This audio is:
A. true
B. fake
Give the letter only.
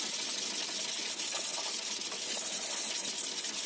A